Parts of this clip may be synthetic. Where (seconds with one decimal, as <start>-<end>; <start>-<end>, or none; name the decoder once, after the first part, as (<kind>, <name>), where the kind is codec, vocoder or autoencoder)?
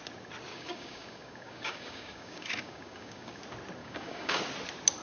0.5-3.4 (codec, DAC); 3.8-4.4